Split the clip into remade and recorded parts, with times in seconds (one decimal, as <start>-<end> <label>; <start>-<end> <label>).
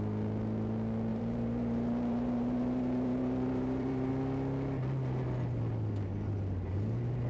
0.0-1.1 recorded; 1.1-4.1 remade; 4.1-7.3 recorded